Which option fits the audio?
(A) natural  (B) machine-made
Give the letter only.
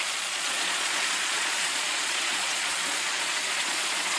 B